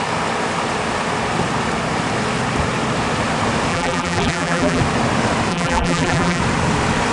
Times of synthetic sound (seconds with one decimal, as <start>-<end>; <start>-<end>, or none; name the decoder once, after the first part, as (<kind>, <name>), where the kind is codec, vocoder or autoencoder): 3.7-4.8 (vocoder, BigVGAN v2); 5.5-6.4